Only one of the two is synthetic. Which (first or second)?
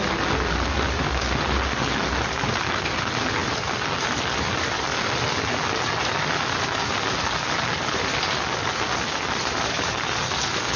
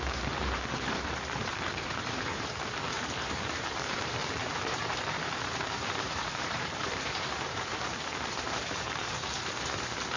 second